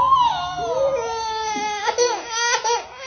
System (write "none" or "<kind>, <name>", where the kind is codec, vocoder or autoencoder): none